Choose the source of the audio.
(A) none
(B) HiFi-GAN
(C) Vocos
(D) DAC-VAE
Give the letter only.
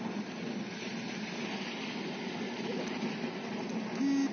A